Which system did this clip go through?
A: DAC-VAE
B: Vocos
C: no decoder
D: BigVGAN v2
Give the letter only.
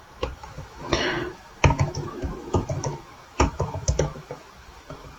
A